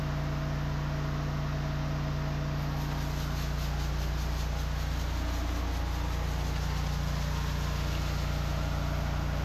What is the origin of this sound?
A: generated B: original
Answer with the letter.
B